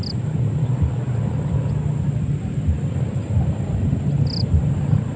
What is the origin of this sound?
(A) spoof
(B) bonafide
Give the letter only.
B